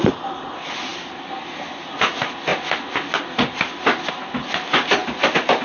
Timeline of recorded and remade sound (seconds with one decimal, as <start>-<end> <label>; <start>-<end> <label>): 0.0-5.6 recorded